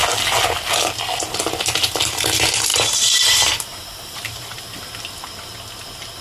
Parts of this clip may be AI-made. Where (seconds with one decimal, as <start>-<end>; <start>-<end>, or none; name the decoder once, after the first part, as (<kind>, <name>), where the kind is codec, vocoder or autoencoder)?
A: 2.7-4.6 (vocoder, BigVGAN v2)